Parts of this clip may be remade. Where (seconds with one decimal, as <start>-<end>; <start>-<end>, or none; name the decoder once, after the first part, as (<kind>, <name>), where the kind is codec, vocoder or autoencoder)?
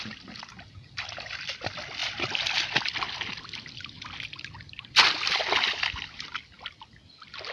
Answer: none